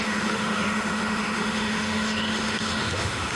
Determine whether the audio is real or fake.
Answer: fake